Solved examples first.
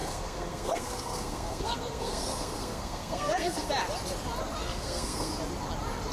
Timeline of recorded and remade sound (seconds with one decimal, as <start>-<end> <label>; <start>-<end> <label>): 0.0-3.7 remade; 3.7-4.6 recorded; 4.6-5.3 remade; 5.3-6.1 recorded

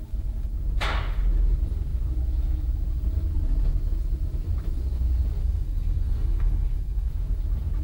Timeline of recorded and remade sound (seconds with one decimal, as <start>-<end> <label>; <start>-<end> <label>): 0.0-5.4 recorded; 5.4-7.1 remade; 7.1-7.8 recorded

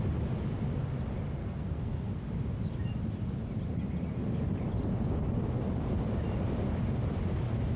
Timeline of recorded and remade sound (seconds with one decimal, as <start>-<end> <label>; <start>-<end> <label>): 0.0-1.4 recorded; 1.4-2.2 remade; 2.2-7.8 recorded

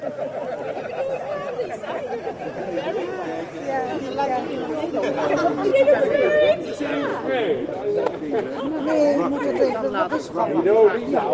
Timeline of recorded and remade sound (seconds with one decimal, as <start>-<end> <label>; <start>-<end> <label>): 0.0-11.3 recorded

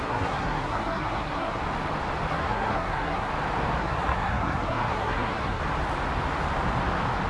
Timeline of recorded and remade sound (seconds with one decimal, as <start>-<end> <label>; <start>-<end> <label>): 0.0-1.6 remade; 1.6-2.3 recorded; 2.3-3.3 remade; 3.3-3.8 recorded; 3.8-5.6 remade; 5.6-7.3 recorded